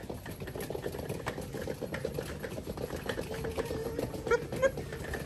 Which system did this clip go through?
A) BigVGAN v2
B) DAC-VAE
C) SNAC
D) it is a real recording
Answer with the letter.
D